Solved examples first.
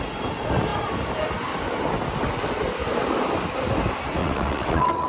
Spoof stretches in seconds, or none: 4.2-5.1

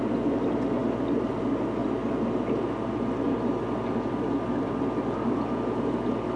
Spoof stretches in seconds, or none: none

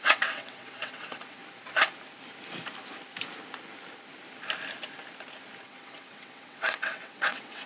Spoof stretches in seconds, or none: 0.0-1.4; 5.6-7.7